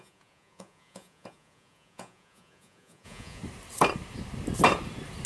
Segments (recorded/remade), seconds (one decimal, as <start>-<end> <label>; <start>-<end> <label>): 0.0-3.4 remade; 3.4-5.3 recorded